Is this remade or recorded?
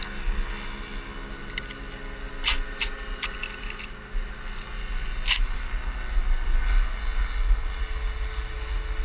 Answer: recorded